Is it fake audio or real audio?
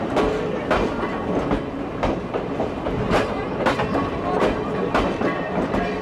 real